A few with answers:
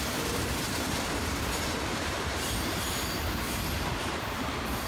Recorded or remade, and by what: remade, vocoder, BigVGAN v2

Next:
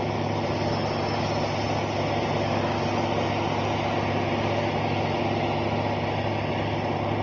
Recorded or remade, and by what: recorded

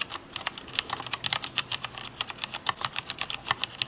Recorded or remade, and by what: recorded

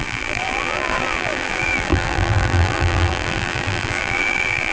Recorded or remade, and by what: remade, vocoder, BigVGAN v2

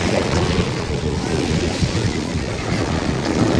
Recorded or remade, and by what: remade, vocoder, Vocos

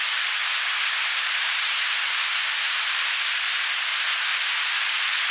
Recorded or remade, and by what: recorded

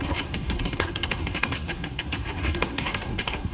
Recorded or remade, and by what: remade, codec, SNAC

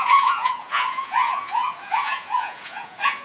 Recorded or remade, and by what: remade, vocoder, Vocos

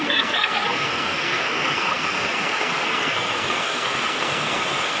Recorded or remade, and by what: remade, codec, SNAC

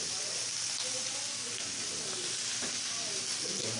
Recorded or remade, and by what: recorded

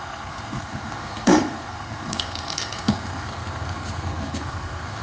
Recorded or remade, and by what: remade, codec, SNAC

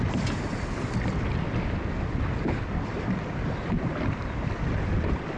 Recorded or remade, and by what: recorded